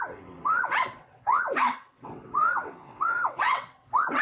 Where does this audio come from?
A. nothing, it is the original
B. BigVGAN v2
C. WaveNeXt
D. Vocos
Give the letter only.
C